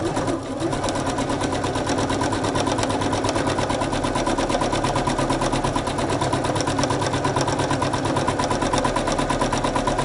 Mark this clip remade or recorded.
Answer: recorded